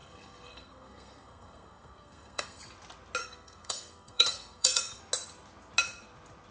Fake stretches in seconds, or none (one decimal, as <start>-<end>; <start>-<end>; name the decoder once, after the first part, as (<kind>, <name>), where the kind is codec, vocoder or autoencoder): 0.0-2.6 (codec, SNAC); 3.2-5.0